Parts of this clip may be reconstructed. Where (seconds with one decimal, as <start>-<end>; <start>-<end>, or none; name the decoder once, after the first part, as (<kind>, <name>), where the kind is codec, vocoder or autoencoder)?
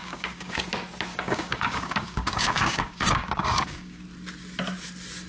0.0-0.7 (codec, DAC); 1.1-4.0